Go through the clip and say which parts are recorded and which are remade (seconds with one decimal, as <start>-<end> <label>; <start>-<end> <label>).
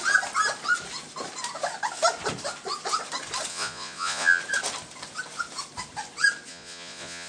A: 0.0-3.5 recorded; 3.5-4.4 remade; 4.4-6.5 recorded; 6.5-7.3 remade